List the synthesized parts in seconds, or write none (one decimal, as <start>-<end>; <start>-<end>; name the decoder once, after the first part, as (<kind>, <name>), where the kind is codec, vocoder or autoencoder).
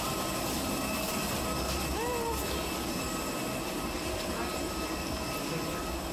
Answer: none